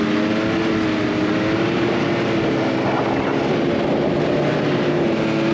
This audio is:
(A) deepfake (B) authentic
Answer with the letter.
B